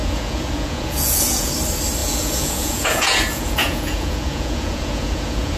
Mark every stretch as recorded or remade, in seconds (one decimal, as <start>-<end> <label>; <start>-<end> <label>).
0.0-1.5 remade; 1.5-2.0 recorded; 2.0-5.6 remade